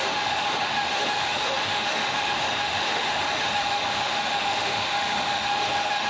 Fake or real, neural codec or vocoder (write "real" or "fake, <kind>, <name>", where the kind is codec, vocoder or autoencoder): fake, autoencoder, DAC-VAE